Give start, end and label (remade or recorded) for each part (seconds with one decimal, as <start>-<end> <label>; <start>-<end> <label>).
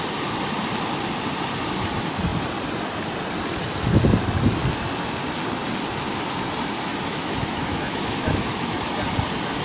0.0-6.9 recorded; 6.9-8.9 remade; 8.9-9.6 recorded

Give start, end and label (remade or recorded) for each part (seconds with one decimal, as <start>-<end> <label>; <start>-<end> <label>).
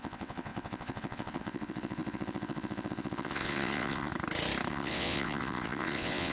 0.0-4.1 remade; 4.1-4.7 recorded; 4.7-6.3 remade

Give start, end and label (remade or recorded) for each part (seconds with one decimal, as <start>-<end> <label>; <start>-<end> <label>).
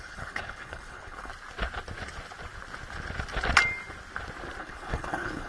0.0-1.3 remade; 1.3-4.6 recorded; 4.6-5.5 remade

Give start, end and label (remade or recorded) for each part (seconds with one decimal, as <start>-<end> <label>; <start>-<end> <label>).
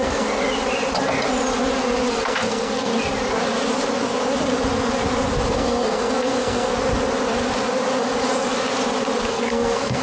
0.0-0.4 remade; 0.4-2.1 recorded; 2.1-2.9 remade; 2.9-5.5 recorded; 5.5-6.7 remade; 6.7-9.3 recorded; 9.3-10.0 remade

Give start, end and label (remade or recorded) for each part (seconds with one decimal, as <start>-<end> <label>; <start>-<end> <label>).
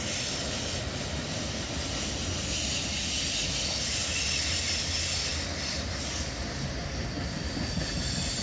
0.0-8.4 recorded